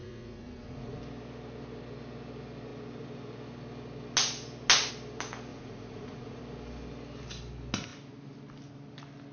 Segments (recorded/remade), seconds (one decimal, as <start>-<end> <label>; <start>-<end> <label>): 0.0-1.0 remade; 1.0-5.5 recorded; 5.5-6.4 remade; 6.4-9.3 recorded